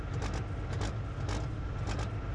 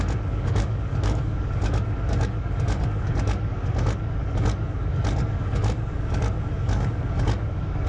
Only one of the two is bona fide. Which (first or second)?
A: first